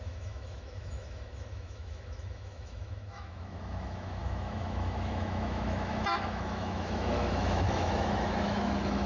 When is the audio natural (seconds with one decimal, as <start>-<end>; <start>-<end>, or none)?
none

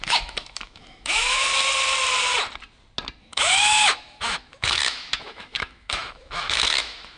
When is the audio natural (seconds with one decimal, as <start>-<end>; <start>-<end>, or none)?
1.5-3.2

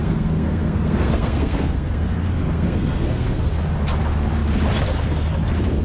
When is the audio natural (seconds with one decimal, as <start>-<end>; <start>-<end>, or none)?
3.5-5.8

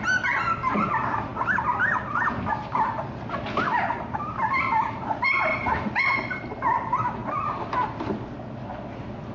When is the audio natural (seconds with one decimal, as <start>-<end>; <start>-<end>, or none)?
0.0-3.7; 5.0-5.5; 6.0-7.2; 8.1-9.3